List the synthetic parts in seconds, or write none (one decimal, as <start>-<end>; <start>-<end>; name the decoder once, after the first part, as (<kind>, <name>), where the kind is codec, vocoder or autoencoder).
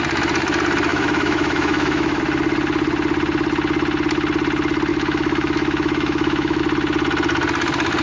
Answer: 0.9-2.2 (autoencoder, DAC-VAE); 4.9-6.6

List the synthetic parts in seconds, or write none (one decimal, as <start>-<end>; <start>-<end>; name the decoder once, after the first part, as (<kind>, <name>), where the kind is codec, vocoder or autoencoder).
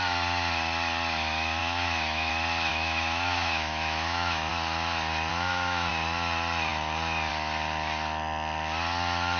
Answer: 1.6-2.3 (autoencoder, DAC-VAE); 2.7-4.5; 5.3-5.9